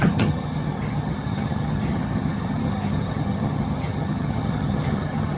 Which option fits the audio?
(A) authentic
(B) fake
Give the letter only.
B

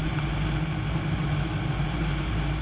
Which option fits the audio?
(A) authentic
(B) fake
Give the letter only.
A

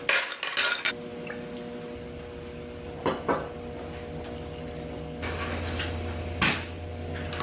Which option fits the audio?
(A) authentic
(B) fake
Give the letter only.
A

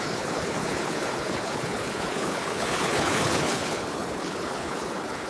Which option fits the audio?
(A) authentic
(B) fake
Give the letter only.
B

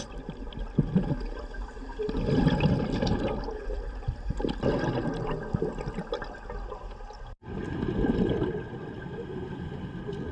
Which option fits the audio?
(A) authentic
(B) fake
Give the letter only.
A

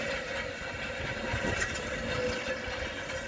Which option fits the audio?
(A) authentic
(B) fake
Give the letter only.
A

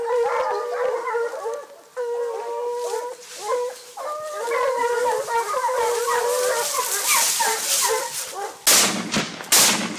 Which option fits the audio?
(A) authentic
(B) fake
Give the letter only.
A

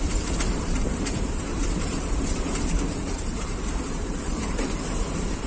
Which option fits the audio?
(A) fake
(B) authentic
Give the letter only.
A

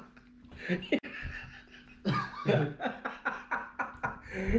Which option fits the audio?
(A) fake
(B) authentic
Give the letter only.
B